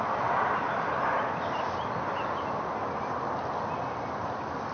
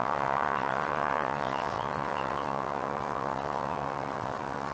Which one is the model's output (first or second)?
second